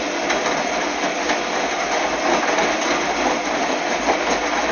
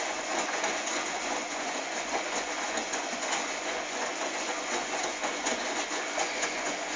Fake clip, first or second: second